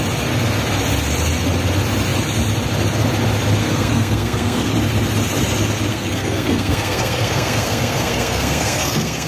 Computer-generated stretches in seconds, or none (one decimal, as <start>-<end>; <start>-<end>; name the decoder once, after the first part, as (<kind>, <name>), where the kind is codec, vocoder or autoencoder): 3.6-4.7 (codec, SNAC); 5.9-9.3